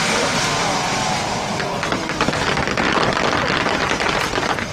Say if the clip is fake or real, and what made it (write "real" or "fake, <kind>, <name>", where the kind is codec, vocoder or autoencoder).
real